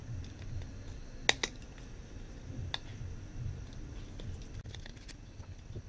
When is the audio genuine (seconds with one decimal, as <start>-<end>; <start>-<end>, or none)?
0.0-5.9